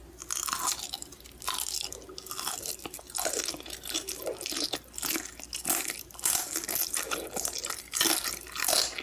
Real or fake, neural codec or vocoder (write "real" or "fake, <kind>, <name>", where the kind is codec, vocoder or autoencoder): real